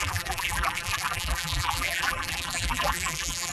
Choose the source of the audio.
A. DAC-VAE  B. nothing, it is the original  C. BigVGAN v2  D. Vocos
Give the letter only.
C